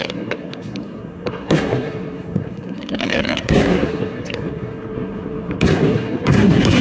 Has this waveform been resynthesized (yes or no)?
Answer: yes